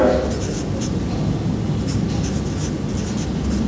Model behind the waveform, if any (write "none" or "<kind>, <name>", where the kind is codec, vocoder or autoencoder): none